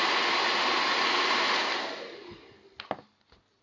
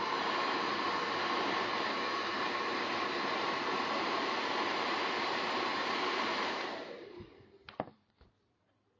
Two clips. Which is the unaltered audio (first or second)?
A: first